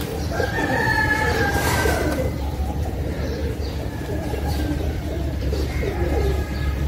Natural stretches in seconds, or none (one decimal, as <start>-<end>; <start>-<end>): 3.4-4.2